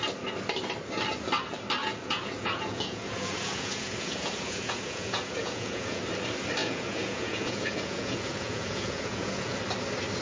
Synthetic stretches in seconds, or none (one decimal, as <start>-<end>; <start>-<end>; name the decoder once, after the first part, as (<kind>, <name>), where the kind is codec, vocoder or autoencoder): 1.8-6.0 (vocoder, Vocos); 6.6-9.6